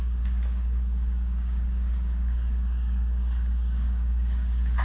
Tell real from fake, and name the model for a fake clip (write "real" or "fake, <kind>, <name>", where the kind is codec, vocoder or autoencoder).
fake, codec, DAC